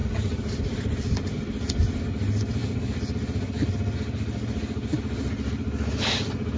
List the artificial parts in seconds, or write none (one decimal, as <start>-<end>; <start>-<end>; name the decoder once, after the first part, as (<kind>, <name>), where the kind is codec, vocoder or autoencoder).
none

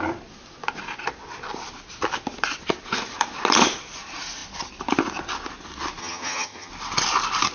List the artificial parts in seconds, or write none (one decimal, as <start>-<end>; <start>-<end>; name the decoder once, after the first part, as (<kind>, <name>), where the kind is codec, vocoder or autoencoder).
6.0-6.7 (vocoder, HiFi-GAN)

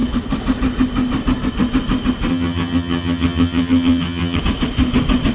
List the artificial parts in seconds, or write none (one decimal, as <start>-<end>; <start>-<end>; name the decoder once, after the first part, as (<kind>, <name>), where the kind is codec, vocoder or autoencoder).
2.3-4.4 (vocoder, HiFi-GAN)

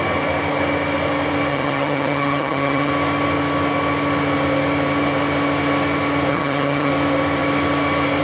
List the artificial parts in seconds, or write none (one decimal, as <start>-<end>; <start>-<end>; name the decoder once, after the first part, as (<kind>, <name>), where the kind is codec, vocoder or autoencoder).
1.5-2.9 (vocoder, HiFi-GAN); 6.3-6.9